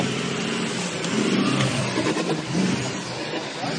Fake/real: fake